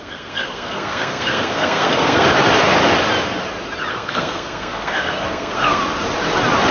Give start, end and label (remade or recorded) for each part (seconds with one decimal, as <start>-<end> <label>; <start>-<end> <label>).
0.0-2.3 remade; 2.3-3.9 recorded; 3.9-5.8 remade; 5.8-6.7 recorded